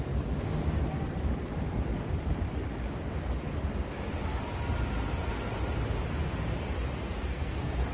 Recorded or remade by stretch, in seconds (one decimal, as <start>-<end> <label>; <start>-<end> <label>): 0.0-7.2 recorded; 7.2-7.9 remade